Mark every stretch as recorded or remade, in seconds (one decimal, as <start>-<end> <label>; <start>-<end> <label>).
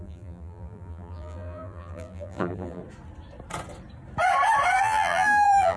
0.0-2.8 remade; 2.8-4.8 recorded; 4.8-5.8 remade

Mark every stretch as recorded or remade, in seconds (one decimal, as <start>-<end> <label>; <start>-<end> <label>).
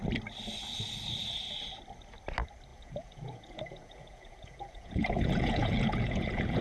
0.0-2.7 recorded; 2.7-6.6 remade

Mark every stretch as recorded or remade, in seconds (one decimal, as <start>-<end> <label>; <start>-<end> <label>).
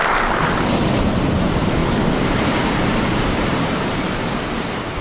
0.0-1.0 recorded; 1.0-1.8 remade; 1.8-2.4 recorded; 2.4-5.0 remade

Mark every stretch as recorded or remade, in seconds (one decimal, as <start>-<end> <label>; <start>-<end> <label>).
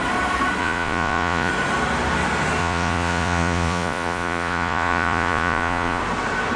0.0-0.6 recorded; 0.6-1.5 remade; 1.5-2.6 recorded; 2.6-6.0 remade; 6.0-6.6 recorded